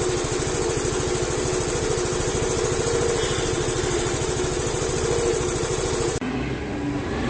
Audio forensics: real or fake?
real